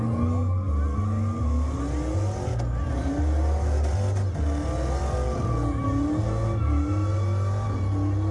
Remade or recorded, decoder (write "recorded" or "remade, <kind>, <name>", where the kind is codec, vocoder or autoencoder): recorded